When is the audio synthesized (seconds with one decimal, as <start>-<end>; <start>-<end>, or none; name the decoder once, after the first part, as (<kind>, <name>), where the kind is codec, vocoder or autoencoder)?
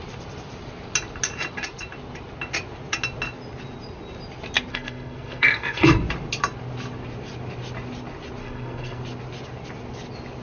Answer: 4.7-6.0 (codec, SNAC); 8.4-9.0